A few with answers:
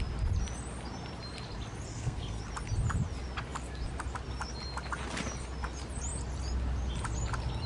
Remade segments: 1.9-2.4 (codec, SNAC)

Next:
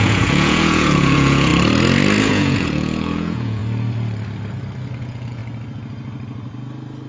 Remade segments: 0.0-1.5 (vocoder, Vocos); 2.2-3.6; 5.0-5.4